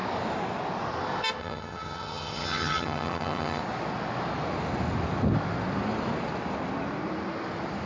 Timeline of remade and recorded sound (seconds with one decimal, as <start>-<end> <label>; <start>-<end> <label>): 0.0-1.4 recorded; 1.4-3.6 remade; 3.6-7.9 recorded